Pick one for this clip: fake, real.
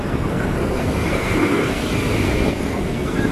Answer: fake